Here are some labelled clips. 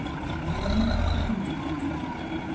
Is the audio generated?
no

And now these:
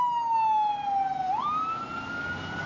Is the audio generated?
no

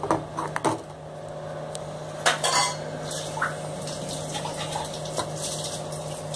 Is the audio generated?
no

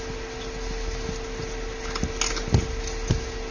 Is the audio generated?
no